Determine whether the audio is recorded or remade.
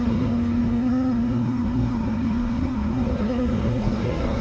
remade